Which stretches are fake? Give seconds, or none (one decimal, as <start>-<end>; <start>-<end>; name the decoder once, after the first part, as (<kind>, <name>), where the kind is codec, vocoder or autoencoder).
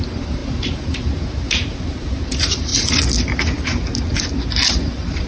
0.0-2.7 (vocoder, BigVGAN v2); 3.4-3.9; 4.7-5.3